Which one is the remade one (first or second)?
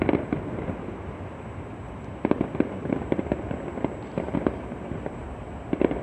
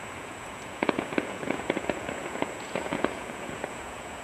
second